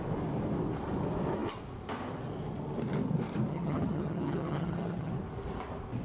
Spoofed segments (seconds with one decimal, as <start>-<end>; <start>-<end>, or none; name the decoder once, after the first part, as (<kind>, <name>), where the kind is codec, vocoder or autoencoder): 3.5-5.1 (vocoder, HiFi-GAN)